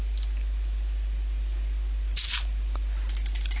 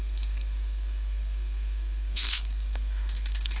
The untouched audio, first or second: first